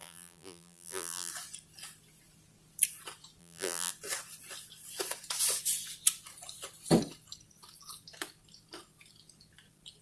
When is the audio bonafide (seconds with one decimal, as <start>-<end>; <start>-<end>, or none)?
1.3-3.4; 3.9-10.0